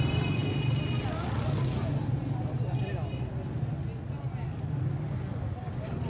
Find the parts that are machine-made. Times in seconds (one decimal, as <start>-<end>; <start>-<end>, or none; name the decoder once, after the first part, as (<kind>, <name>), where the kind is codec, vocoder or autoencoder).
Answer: none